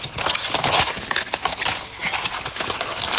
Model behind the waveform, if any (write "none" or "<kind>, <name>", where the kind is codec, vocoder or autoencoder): none